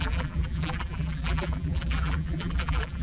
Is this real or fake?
fake